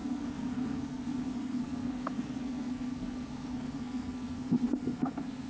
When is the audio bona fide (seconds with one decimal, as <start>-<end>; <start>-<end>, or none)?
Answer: none